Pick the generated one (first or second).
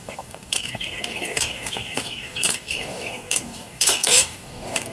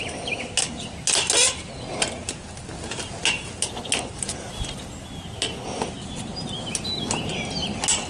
first